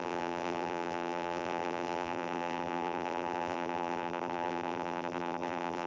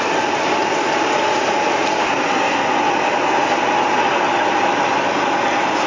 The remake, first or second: first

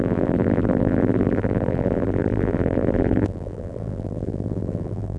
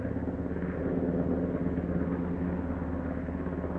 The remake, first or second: first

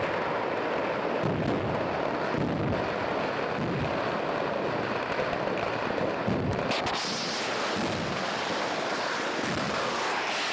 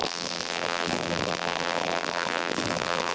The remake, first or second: second